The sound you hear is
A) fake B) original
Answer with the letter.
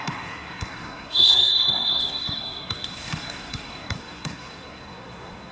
A